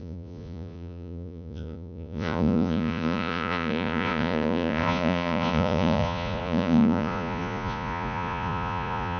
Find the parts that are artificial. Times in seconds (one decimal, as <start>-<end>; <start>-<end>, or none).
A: 0.0-9.2